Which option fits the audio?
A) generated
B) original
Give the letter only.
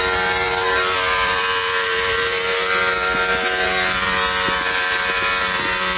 A